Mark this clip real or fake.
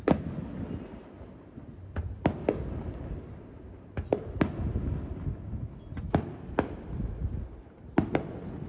real